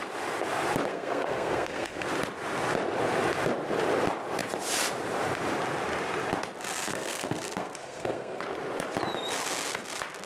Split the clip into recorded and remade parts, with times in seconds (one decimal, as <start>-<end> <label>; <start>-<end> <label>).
0.0-0.9 recorded; 0.9-2.1 remade; 2.1-6.9 recorded; 6.9-8.4 remade; 8.4-10.3 recorded